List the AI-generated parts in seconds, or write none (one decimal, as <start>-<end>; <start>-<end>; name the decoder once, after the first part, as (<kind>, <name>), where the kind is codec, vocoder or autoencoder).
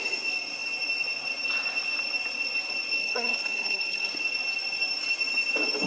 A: 3.0-4.1 (codec, SNAC)